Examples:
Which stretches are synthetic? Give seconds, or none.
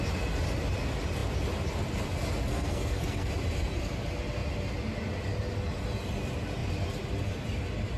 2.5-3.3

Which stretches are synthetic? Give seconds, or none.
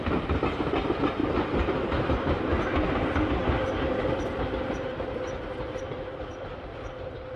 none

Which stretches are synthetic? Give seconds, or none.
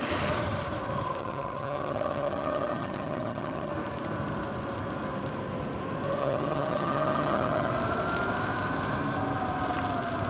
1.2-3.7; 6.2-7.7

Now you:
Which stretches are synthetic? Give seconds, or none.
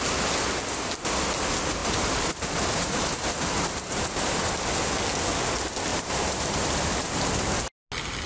1.8-4.7; 5.9-7.1